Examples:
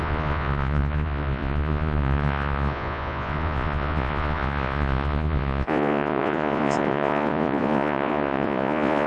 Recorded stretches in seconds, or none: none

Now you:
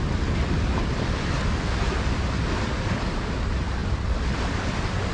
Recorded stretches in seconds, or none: 0.0-5.1

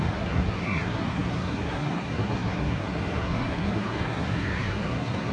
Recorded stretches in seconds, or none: none